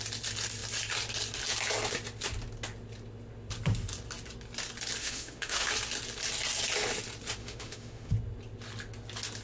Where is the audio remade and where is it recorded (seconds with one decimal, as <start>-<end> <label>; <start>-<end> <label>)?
0.0-5.0 recorded; 5.0-5.7 remade; 5.7-7.4 recorded; 7.4-8.1 remade; 8.1-9.4 recorded